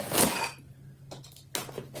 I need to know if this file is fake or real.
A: real